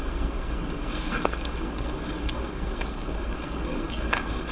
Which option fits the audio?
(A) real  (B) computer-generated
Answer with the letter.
B